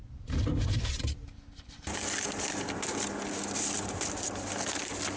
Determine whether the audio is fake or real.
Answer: real